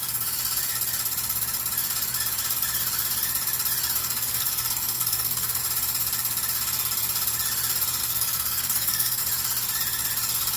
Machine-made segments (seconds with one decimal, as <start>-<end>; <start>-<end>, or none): 4.0-5.6; 8.0-9.2